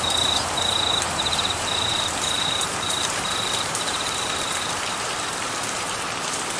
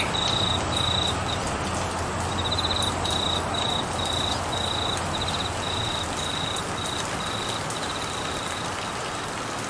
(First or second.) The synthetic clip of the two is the first